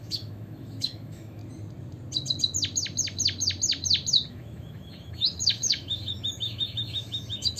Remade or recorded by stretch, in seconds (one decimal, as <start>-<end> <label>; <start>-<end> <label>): 0.0-1.4 remade; 1.4-4.3 recorded; 4.3-7.6 remade